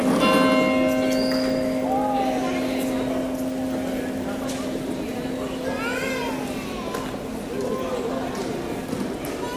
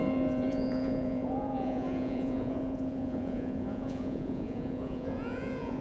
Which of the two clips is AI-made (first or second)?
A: second